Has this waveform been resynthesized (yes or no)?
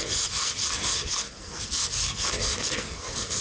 yes